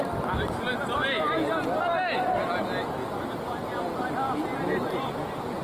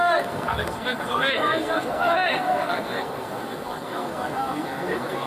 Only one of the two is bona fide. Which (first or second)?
first